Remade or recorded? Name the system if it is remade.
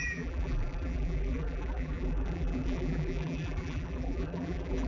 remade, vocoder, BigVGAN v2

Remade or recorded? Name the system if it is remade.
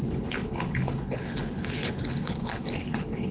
remade, codec, HILCodec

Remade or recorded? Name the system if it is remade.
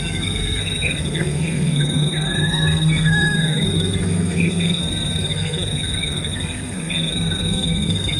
remade, codec, SNAC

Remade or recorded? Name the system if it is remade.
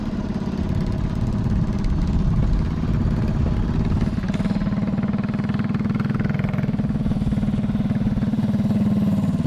recorded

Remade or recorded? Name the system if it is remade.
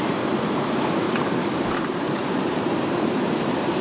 remade, vocoder, BigVGAN v2